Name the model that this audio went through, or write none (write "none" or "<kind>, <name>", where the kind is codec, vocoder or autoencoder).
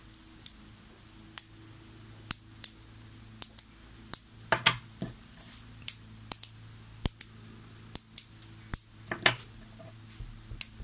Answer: none